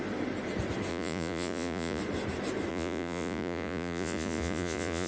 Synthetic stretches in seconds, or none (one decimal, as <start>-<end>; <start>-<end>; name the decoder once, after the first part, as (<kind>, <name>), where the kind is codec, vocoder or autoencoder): 0.9-2.0 (vocoder, Vocos); 2.7-5.1